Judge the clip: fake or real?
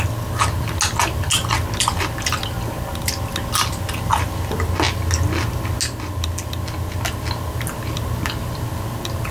real